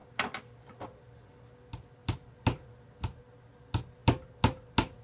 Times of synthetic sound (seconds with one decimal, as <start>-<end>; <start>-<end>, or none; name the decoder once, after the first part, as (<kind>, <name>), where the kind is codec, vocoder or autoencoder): none